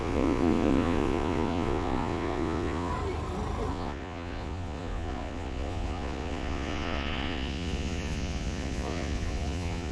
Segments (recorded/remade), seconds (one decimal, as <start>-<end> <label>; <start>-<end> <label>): 0.0-2.9 remade; 2.9-3.7 recorded; 3.7-9.9 remade